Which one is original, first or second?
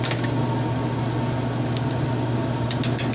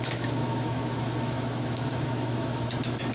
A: first